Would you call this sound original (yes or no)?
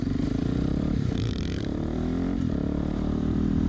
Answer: no